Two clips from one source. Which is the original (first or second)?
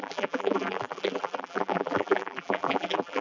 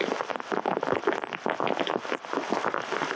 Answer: second